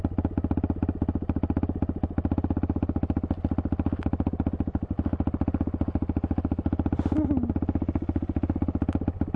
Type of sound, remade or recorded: recorded